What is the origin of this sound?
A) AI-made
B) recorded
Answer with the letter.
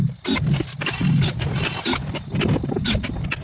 B